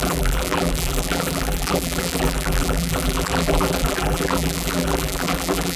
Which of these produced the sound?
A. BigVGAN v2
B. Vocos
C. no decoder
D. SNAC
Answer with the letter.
A